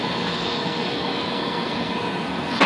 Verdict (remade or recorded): remade